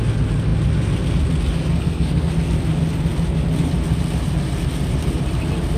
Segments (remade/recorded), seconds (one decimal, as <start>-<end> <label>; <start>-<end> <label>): 0.0-1.7 recorded; 1.7-2.3 remade; 2.3-5.8 recorded